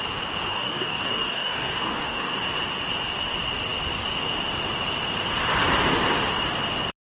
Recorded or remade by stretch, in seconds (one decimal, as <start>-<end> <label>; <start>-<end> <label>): 0.0-0.5 recorded; 0.5-2.4 remade; 2.4-7.0 recorded